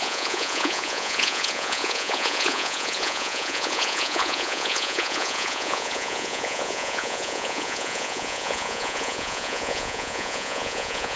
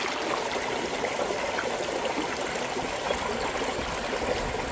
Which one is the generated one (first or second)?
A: first